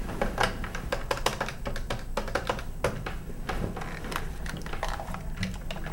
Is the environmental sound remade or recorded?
recorded